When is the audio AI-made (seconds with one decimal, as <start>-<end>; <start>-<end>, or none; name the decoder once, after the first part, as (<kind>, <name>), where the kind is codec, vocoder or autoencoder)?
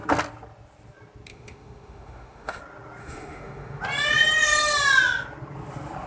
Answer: 1.3-2.6 (autoencoder, DAC-VAE); 3.0-3.8